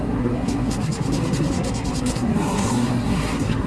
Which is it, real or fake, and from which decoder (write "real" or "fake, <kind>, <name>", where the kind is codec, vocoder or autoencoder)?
fake, codec, SNAC